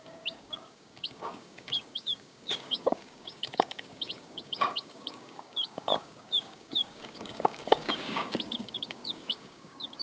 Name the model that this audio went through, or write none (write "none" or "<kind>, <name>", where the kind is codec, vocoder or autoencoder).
codec, DAC